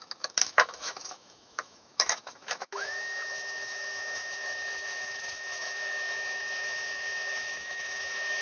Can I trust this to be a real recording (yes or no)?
no